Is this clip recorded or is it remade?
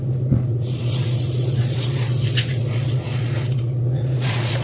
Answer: remade